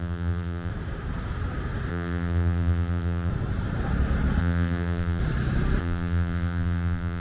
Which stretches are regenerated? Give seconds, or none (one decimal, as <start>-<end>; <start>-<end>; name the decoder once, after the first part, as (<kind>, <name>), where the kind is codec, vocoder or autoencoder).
0.0-0.7 (vocoder, BigVGAN v2); 1.9-3.3; 4.4-5.2; 5.8-7.2